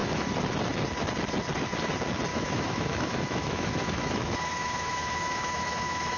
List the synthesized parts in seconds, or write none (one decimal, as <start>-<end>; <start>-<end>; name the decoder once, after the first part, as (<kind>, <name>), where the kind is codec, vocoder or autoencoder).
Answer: 2.3-6.2 (autoencoder, DAC-VAE)